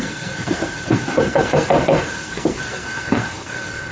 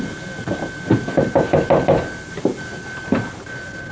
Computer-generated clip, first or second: first